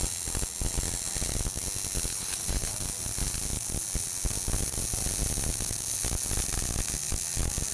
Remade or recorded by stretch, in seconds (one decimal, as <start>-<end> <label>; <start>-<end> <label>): 0.0-2.1 recorded; 2.1-2.7 remade; 2.7-7.7 recorded